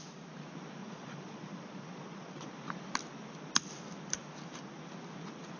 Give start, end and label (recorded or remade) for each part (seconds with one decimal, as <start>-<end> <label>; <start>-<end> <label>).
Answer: 0.0-0.8 recorded; 0.8-2.5 remade; 2.5-5.6 recorded